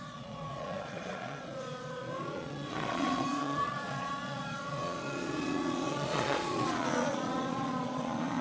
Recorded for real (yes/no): no